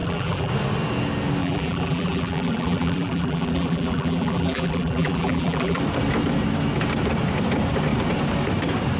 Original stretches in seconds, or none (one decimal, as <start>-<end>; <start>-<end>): 0.5-1.4; 5.8-9.0